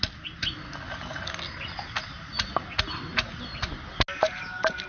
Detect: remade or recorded recorded